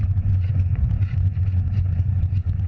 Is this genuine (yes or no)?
no